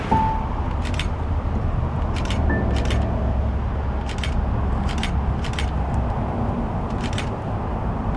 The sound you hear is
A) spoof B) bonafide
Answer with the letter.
B